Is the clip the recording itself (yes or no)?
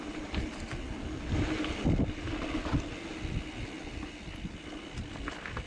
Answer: yes